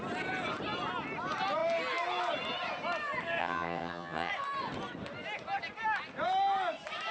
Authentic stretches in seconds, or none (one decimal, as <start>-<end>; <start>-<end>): 0.0-3.4; 4.3-7.1